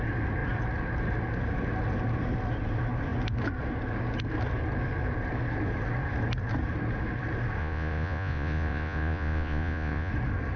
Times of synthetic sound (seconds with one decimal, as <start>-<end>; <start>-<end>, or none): 7.6-10.1